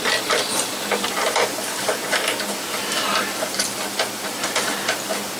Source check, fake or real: real